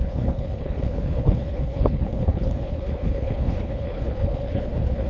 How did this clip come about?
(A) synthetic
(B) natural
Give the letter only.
A